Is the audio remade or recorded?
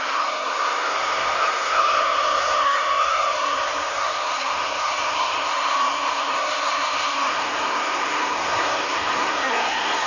remade